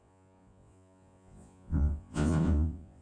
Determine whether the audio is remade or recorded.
remade